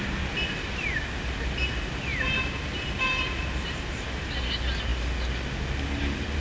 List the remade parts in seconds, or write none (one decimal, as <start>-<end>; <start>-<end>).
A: 2.1-4.4